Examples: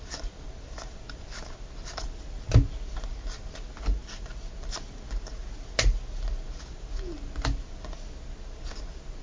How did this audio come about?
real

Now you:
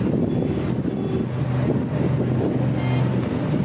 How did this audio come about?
real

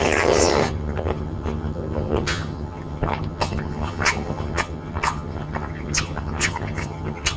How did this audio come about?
fake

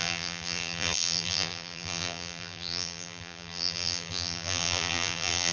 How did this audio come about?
fake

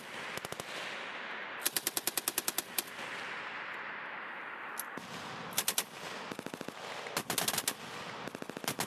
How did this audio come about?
real